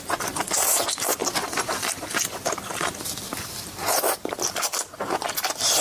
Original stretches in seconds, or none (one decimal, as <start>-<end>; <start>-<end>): 0.0-1.2; 4.7-5.8